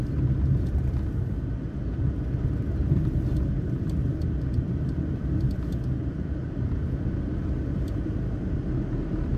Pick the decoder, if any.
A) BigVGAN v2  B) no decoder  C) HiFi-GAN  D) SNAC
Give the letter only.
B